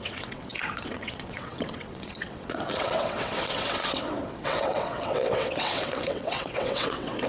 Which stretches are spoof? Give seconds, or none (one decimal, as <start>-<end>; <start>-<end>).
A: 0.0-7.3